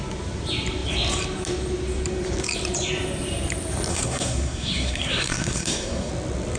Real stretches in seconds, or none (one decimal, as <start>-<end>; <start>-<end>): 0.0-3.9; 6.1-6.6